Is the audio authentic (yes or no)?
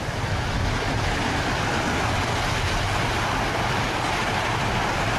no